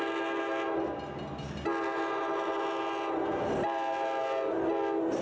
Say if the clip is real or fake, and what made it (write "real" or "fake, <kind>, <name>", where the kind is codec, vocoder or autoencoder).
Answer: real